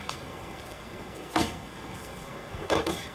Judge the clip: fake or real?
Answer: fake